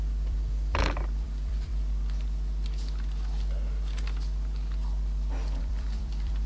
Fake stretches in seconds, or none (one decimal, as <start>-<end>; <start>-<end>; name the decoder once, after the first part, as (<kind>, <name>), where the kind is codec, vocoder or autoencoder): 0.0-1.7 (vocoder, BigVGAN v2); 5.6-6.5